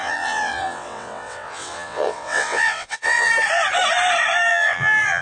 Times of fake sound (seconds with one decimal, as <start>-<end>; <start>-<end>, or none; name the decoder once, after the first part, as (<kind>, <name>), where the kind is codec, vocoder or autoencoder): 0.0-3.3 (vocoder, WaveNeXt); 4.5-5.2